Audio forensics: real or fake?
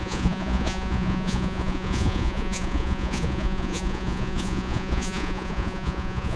fake